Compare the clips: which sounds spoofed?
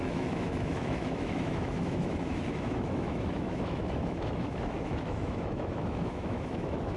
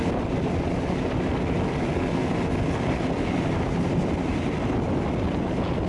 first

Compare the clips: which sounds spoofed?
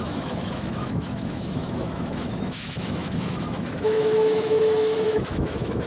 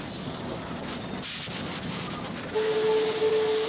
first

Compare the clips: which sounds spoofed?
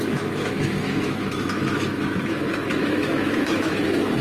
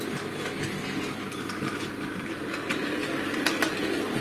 first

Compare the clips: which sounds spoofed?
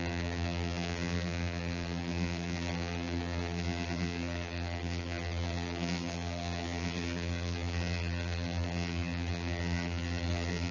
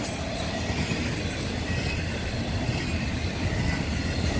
first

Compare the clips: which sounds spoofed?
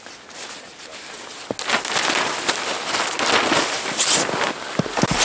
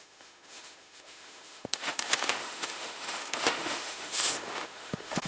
second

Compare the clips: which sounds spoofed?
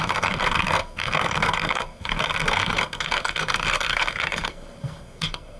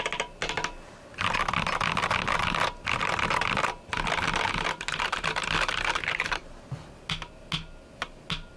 first